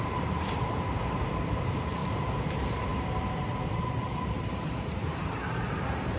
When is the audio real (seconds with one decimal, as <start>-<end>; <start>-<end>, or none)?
2.0-2.5; 2.9-3.8